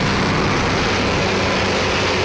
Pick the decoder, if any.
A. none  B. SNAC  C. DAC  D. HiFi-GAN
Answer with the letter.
A